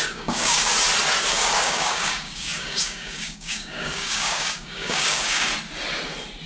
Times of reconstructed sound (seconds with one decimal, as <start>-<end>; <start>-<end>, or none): 0.0-0.7; 1.3-5.5